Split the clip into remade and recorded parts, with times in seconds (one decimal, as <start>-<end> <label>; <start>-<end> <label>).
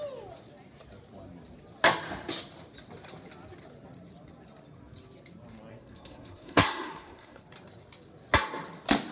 0.0-5.7 recorded; 5.7-7.4 remade; 7.4-9.1 recorded